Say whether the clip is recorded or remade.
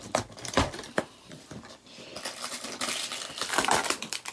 remade